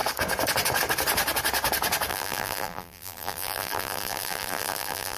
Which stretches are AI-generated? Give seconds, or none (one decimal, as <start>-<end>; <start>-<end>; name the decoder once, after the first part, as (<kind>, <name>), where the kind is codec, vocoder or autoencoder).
2.1-5.2 (vocoder, BigVGAN v2)